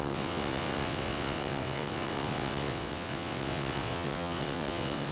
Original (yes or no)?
no